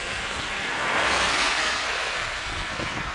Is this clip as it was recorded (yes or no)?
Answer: no